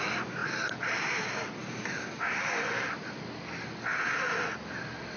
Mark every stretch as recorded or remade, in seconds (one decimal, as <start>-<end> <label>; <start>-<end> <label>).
0.0-5.2 recorded